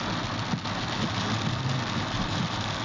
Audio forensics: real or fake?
real